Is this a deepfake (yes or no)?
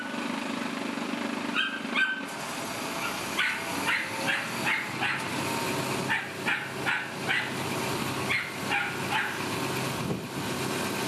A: no